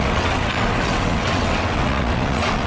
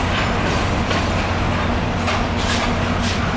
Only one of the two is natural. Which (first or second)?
second